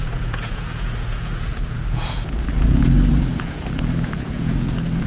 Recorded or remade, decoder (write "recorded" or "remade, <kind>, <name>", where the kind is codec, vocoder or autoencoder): remade, vocoder, Vocos